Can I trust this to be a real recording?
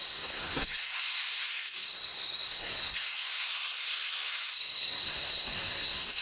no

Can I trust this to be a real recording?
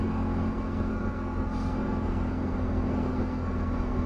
no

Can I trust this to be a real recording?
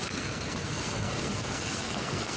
no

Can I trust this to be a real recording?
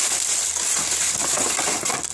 yes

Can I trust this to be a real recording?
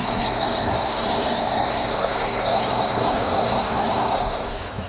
no